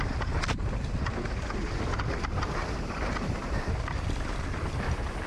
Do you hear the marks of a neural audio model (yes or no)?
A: no